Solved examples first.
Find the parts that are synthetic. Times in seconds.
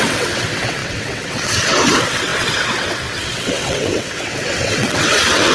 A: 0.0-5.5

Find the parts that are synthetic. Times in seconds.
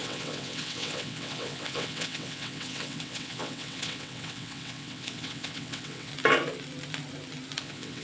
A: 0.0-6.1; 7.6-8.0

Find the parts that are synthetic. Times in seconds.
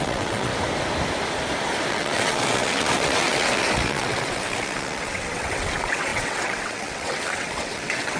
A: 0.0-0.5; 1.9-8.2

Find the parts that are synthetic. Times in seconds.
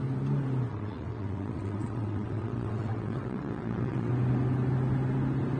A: 0.7-4.1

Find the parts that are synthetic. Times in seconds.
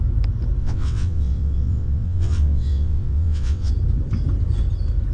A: 0.6-3.7